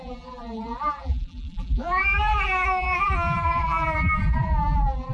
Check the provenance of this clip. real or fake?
fake